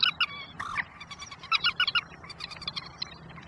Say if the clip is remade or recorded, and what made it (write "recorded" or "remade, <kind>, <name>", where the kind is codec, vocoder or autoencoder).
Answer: recorded